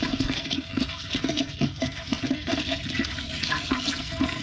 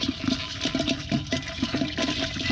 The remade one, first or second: first